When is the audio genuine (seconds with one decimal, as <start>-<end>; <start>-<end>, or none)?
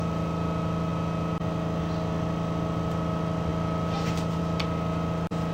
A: 0.0-5.5